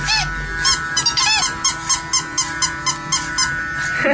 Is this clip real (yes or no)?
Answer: yes